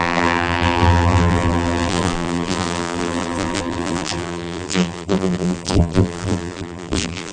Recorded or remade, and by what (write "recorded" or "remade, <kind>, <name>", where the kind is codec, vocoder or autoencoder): remade, vocoder, BigVGAN v2